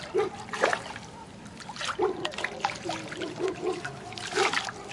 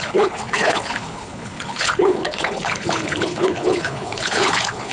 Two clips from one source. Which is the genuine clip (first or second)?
first